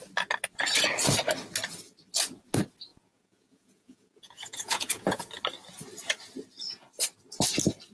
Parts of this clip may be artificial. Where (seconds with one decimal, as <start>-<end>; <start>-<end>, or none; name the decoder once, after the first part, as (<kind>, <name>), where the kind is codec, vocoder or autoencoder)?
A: 2.9-5.3 (vocoder, Vocos)